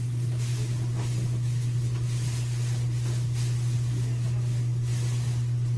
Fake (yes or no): no